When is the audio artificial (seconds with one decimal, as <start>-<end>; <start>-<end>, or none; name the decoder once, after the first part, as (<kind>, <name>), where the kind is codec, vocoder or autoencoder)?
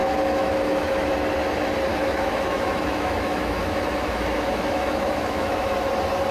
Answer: 0.0-1.1 (autoencoder, DAC-VAE); 1.9-5.7